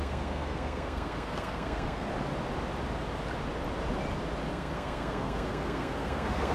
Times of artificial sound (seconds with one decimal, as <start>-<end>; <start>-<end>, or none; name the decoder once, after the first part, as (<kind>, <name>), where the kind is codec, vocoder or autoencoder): 0.0-2.1 (codec, SNAC); 4.5-6.5